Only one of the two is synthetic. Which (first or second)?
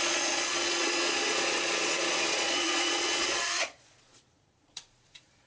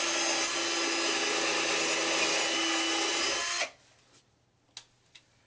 first